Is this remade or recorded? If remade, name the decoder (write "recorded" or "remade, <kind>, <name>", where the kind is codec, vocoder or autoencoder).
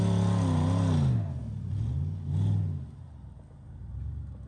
recorded